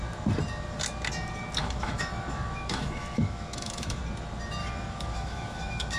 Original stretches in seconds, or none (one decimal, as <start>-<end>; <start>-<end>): 0.0-1.6; 4.0-4.6